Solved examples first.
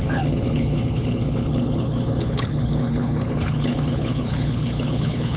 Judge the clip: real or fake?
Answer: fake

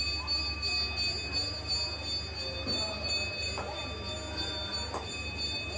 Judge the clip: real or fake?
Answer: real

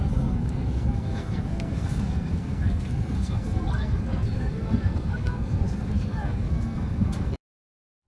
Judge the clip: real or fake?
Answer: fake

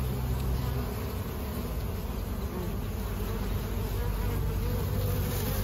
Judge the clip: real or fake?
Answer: real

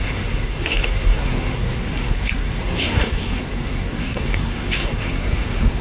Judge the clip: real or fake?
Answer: fake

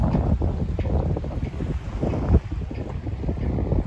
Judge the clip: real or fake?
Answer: real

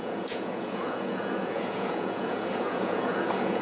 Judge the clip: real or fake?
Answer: fake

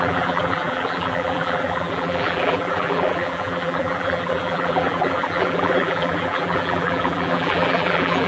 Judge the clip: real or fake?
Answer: fake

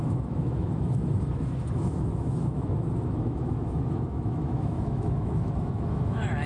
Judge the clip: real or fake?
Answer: fake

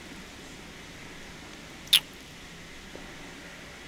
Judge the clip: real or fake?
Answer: real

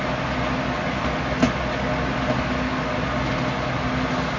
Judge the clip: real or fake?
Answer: real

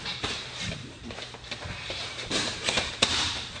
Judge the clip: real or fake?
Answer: fake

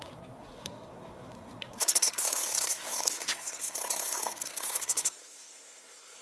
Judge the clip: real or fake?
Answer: fake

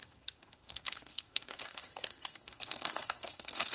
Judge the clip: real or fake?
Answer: fake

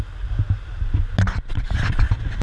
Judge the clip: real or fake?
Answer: real